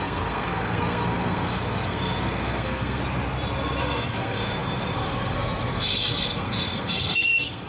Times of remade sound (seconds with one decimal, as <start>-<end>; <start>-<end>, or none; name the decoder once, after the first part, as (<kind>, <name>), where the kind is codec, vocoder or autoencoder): 0.0-3.0 (codec, SNAC); 3.8-7.7